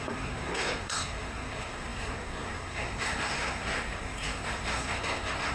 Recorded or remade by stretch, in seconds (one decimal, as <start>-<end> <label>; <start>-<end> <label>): 0.0-5.5 remade